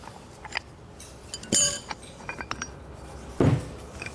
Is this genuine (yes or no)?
yes